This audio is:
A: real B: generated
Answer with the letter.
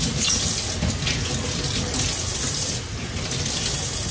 A